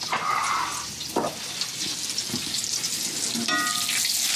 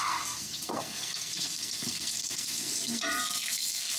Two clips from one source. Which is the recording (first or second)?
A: first